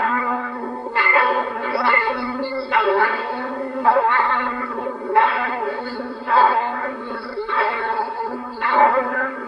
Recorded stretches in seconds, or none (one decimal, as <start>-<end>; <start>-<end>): none